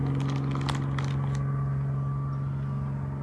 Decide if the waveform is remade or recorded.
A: recorded